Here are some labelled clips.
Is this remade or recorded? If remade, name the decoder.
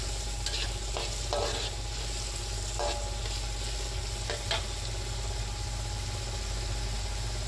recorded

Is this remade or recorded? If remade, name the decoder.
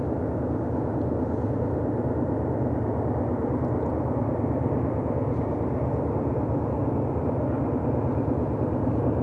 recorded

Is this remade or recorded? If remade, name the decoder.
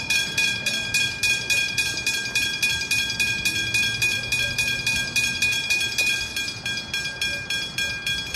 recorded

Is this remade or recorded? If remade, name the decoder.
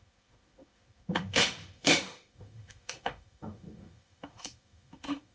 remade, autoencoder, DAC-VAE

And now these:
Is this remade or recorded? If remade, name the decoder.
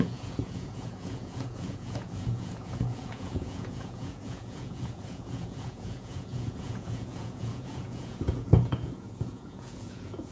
remade, vocoder, Vocos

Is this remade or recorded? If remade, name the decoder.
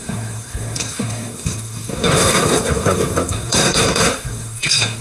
remade, codec, SNAC